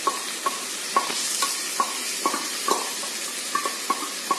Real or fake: real